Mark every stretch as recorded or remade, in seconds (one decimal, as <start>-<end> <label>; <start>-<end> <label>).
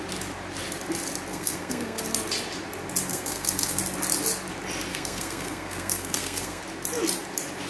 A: 0.0-1.3 recorded; 1.3-2.0 remade; 2.0-3.1 recorded; 3.1-3.8 remade; 3.8-4.9 recorded; 4.9-6.6 remade; 6.6-7.7 recorded